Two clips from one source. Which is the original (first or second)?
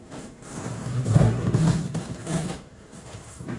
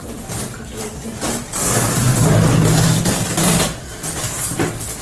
second